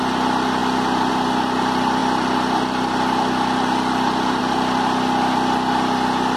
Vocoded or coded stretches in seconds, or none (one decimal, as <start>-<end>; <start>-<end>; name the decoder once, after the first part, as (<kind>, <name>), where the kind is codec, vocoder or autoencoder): none